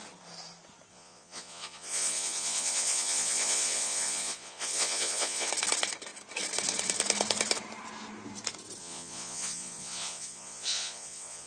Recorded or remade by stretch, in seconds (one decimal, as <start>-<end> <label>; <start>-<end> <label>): 0.0-0.9 recorded; 0.9-5.5 remade; 5.5-8.8 recorded; 8.8-11.5 remade